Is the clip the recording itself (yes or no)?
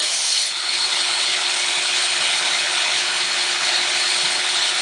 no